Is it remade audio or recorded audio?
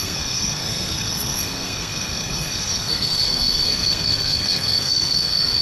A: remade